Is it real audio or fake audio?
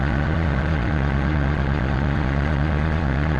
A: fake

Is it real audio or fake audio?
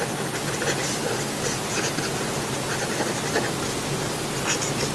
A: real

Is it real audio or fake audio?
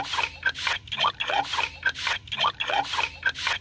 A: real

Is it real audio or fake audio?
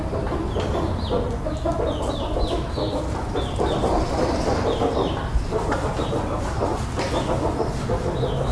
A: real